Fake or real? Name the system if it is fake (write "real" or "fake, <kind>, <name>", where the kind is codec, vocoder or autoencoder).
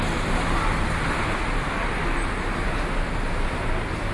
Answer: real